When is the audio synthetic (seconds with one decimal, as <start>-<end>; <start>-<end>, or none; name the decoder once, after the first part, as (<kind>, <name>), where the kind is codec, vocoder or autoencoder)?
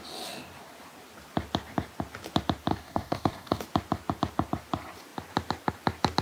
2.7-3.6 (codec, DAC)